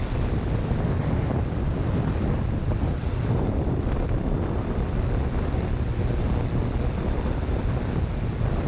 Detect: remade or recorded remade